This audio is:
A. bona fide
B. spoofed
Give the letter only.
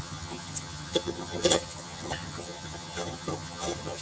B